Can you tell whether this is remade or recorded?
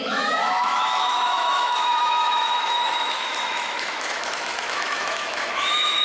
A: remade